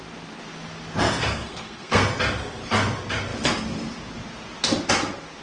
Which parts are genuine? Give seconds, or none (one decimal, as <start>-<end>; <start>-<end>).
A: 0.0-1.2; 2.0-5.4